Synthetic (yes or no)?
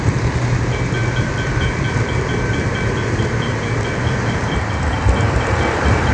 no